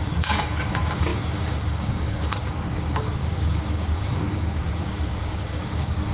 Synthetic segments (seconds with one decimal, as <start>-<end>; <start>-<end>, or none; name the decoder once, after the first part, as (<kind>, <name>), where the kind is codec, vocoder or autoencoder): 0.0-6.1 (codec, DAC)